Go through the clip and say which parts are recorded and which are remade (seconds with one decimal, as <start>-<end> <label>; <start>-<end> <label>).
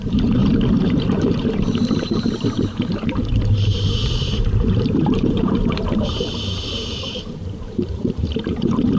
0.0-9.0 remade